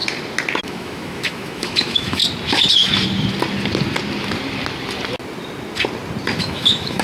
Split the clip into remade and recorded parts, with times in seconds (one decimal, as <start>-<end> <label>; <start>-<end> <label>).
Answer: 0.0-0.6 recorded; 0.6-2.2 remade; 2.2-6.4 recorded; 6.4-7.0 remade